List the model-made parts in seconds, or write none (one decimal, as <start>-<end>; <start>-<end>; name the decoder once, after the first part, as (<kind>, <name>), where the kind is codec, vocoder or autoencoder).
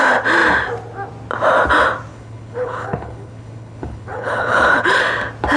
2.1-5.0 (codec, HILCodec)